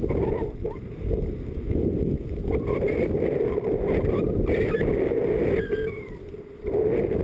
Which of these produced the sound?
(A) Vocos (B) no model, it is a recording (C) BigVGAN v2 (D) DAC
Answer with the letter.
C